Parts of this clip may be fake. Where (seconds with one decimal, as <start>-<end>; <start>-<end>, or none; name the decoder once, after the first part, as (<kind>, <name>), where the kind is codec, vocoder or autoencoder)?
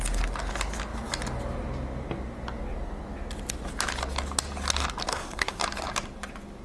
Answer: 5.1-5.6 (codec, SNAC)